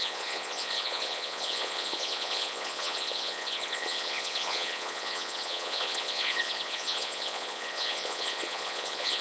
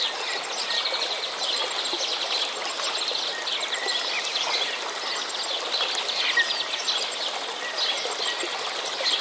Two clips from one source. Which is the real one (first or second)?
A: second